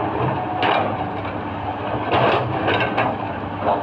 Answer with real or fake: real